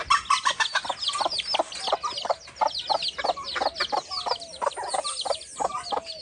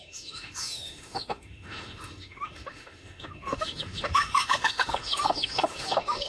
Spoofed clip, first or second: second